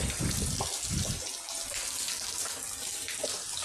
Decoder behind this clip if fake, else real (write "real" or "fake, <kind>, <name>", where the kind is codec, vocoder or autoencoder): real